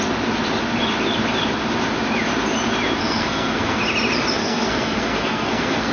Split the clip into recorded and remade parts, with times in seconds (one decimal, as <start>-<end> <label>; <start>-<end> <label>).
0.0-3.0 recorded; 3.0-3.8 remade; 3.8-4.4 recorded; 4.4-5.9 remade